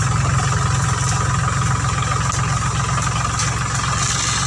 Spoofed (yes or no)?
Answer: no